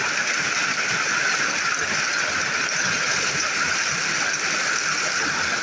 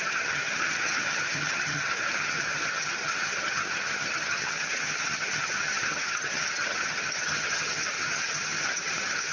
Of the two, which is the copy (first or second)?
second